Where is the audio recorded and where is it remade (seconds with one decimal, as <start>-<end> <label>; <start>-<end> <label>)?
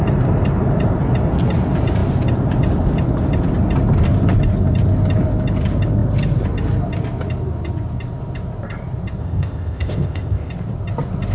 0.0-9.2 recorded; 9.2-10.5 remade; 10.5-11.3 recorded